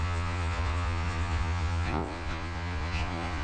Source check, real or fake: fake